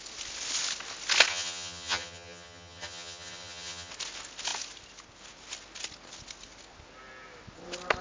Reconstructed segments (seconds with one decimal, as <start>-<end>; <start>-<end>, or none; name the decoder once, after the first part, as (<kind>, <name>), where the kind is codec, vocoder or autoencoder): 1.3-3.9 (vocoder, HiFi-GAN)